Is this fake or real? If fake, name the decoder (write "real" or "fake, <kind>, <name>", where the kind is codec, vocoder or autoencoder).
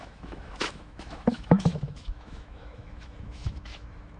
fake, autoencoder, DAC-VAE